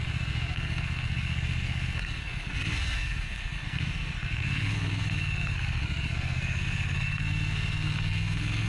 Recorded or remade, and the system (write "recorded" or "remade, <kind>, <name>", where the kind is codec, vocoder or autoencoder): remade, codec, SNAC